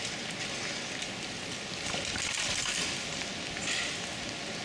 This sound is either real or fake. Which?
real